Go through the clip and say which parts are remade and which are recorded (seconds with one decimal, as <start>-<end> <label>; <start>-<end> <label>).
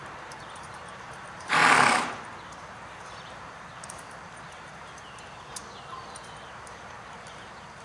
0.0-1.6 remade; 1.6-3.1 recorded; 3.1-5.6 remade; 5.6-6.4 recorded; 6.4-7.8 remade